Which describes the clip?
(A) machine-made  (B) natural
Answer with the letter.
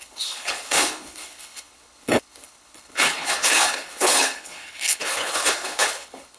A